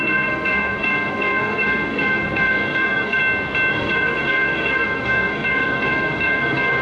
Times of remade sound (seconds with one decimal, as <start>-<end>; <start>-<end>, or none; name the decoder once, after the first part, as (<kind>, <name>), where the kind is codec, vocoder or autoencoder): 0.0-3.2 (codec, SNAC); 3.7-6.8